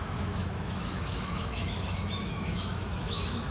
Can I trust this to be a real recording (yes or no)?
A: no